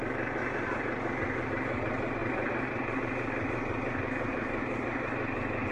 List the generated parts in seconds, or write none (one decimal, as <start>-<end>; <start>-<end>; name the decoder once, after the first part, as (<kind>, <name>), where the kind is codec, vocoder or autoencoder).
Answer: 2.2-3.0 (vocoder, BigVGAN v2); 4.3-5.2